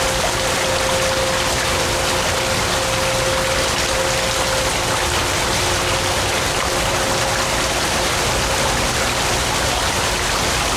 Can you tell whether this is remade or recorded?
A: recorded